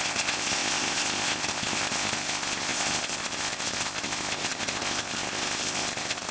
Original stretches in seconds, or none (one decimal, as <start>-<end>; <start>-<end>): none

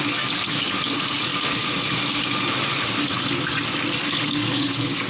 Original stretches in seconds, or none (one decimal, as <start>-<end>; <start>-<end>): 1.3-4.0